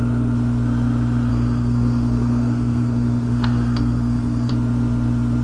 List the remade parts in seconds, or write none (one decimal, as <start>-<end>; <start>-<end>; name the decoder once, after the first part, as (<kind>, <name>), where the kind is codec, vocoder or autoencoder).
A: 1.3-4.5 (codec, SNAC)